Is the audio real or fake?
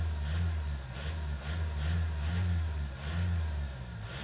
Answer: real